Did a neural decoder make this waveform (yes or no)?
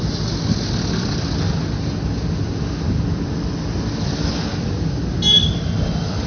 no